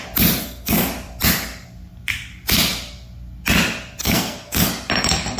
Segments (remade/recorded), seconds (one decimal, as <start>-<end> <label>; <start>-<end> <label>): 0.0-0.4 recorded; 0.4-0.9 remade; 0.9-4.0 recorded; 4.0-4.7 remade; 4.7-5.4 recorded